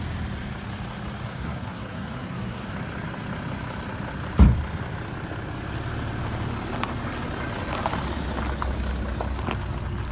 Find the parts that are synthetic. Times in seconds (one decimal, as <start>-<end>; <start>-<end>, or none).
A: 1.3-2.7